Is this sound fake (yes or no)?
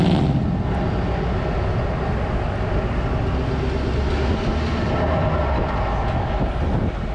no